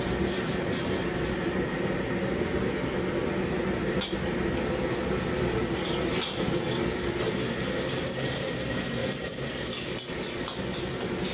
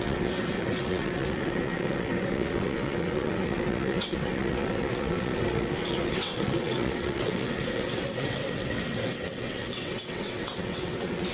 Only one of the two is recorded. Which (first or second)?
first